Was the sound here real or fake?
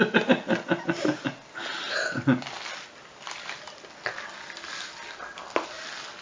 real